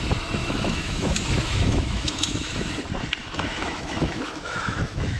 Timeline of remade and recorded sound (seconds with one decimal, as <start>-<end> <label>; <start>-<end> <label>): 0.0-0.4 recorded; 0.4-2.7 remade; 2.7-3.2 recorded; 3.2-5.2 remade